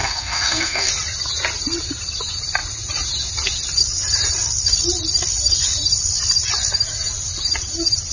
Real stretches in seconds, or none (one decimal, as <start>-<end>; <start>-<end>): 0.9-8.1